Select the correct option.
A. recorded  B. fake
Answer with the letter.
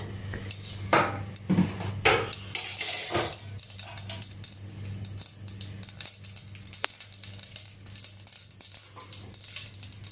A